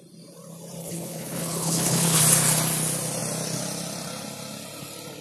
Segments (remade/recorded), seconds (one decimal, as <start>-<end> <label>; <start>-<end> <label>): 0.0-0.8 recorded; 0.8-2.2 remade; 2.2-5.2 recorded